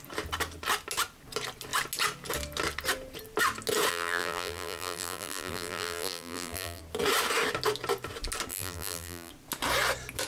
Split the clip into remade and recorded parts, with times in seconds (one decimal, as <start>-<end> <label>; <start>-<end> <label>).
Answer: 0.0-3.9 recorded; 3.9-6.8 remade; 6.8-8.5 recorded; 8.5-9.3 remade; 9.3-10.3 recorded